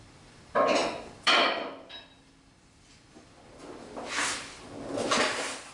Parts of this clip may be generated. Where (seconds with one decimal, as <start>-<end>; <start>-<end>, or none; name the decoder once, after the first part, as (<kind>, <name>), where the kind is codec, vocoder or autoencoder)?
none